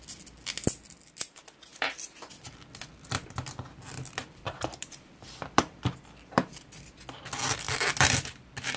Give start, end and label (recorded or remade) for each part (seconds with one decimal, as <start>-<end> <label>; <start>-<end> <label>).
0.0-4.2 recorded; 4.2-6.6 remade; 6.6-8.8 recorded